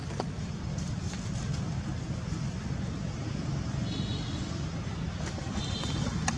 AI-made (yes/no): no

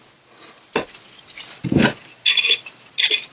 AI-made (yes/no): no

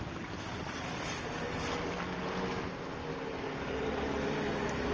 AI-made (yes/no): no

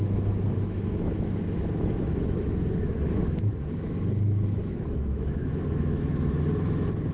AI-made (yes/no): yes